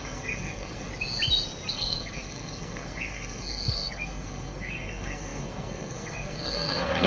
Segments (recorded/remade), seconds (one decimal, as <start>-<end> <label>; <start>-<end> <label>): 0.0-0.9 remade; 0.9-1.7 recorded; 1.7-7.1 remade